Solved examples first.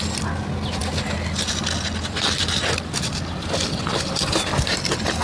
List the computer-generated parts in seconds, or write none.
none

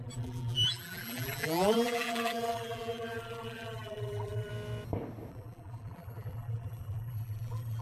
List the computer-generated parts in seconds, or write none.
0.0-4.5 (vocoder, BigVGAN v2); 5.3-7.8